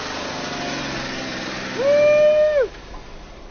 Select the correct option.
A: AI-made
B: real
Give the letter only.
B